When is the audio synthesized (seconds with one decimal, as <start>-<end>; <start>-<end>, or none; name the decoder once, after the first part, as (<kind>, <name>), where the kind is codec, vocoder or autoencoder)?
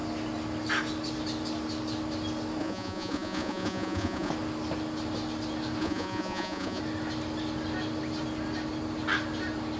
2.6-4.3 (vocoder, Vocos); 5.8-6.8